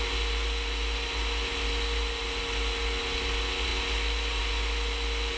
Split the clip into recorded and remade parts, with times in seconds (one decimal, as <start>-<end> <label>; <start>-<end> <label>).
0.0-5.4 recorded